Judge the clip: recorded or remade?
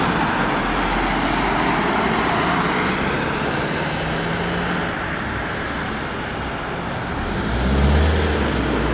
recorded